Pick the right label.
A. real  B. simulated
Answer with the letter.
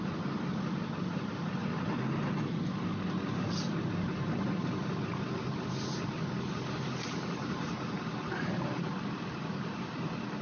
A